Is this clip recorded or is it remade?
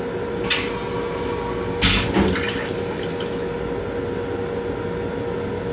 recorded